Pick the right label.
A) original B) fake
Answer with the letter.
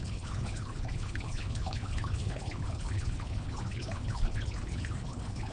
B